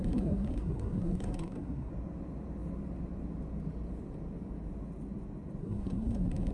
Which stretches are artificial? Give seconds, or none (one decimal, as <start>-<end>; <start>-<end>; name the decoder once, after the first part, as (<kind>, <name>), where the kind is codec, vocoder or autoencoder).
0.0-1.9 (codec, SNAC); 5.6-6.5

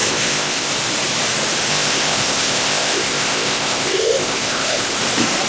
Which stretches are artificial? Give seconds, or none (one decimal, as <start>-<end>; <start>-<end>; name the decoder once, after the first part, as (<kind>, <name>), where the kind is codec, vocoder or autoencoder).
0.0-0.7 (codec, ZipCodec); 1.7-5.0

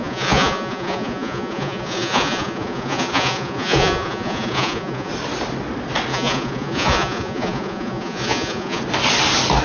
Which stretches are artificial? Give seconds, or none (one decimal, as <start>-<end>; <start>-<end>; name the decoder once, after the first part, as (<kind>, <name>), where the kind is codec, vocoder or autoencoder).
0.0-5.1 (vocoder, Vocos); 6.1-8.8

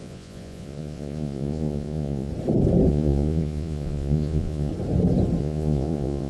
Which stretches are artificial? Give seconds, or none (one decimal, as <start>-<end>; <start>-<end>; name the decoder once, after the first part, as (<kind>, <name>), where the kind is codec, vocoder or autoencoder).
0.0-2.3 (vocoder, Vocos); 2.9-4.7; 5.4-6.3